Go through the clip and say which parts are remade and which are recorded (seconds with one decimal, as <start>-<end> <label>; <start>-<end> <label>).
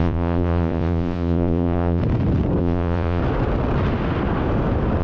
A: 0.0-2.0 remade; 2.0-2.6 recorded; 2.6-3.2 remade; 3.2-5.0 recorded